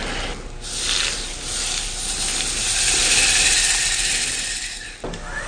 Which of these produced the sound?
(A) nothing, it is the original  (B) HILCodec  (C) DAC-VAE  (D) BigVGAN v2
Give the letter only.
A